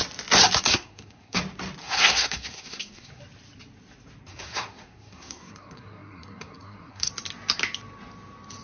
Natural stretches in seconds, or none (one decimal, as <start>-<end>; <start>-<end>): 0.0-0.7; 1.4-1.8; 3.2-4.3; 7.1-8.6